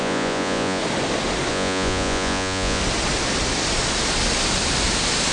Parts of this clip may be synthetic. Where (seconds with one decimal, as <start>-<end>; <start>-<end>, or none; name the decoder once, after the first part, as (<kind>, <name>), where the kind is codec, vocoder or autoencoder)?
0.0-0.8 (vocoder, Vocos); 1.5-2.8